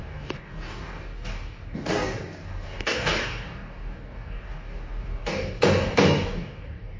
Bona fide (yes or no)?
no